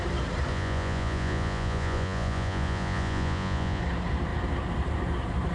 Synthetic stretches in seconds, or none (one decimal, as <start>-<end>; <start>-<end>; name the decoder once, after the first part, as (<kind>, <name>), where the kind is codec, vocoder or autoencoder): 0.5-3.8 (vocoder, Vocos)